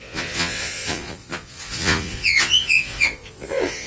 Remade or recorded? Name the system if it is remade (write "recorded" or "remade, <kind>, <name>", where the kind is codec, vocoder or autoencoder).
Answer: remade, vocoder, Vocos